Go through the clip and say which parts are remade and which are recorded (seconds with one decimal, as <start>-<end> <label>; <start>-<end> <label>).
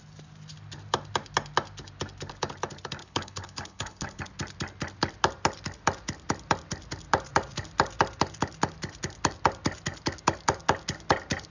0.0-3.0 recorded; 3.0-4.2 remade; 4.2-11.5 recorded